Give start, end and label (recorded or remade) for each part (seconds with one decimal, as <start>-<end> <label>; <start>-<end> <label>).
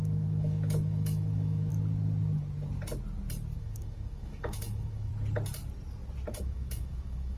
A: 0.0-1.7 remade; 1.7-3.6 recorded; 3.6-5.1 remade; 5.1-6.4 recorded; 6.4-7.4 remade